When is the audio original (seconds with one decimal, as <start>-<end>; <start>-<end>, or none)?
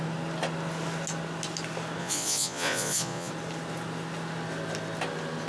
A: 0.0-2.0; 3.3-5.5